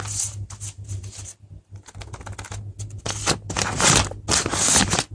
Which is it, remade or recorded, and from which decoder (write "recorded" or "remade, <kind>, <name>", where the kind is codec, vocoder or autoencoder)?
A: recorded